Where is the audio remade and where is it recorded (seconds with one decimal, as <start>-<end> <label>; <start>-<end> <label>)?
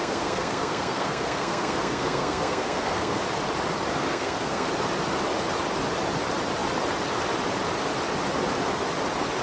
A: 0.0-3.2 remade; 3.2-3.9 recorded; 3.9-4.7 remade; 4.7-9.4 recorded